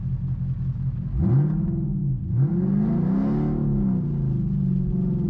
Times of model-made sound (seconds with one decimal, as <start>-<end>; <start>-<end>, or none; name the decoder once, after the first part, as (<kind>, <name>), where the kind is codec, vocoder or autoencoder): none